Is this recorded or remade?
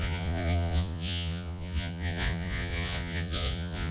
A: remade